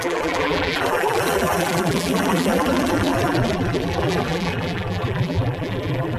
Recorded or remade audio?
remade